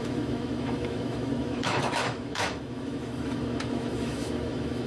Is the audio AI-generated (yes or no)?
yes